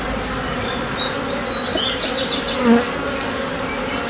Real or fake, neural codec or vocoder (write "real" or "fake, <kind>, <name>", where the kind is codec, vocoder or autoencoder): real